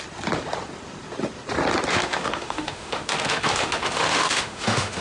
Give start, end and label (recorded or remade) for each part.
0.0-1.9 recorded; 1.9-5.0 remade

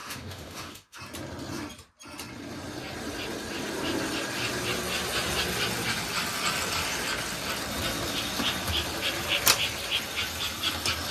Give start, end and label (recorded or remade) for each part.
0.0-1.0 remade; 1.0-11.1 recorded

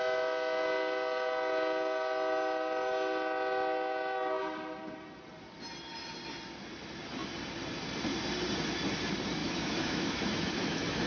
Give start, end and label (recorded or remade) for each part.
0.0-9.4 recorded; 9.4-11.1 remade

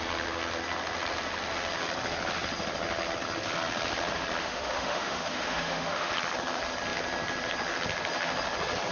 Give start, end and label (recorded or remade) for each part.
0.0-4.4 recorded; 4.4-6.1 remade; 6.1-8.9 recorded

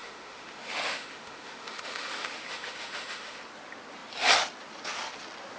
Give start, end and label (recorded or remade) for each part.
0.0-3.4 remade; 3.4-5.6 recorded

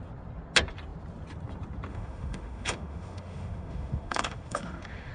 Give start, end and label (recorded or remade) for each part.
0.0-1.9 recorded; 1.9-5.1 remade

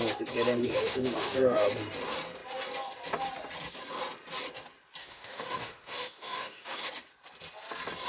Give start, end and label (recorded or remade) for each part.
0.0-0.6 recorded; 0.6-1.6 remade; 1.6-5.0 recorded; 5.0-6.9 remade; 6.9-8.1 recorded